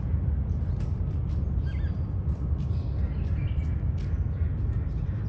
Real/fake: real